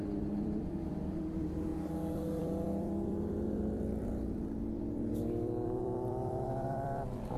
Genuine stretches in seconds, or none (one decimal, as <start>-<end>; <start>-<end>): none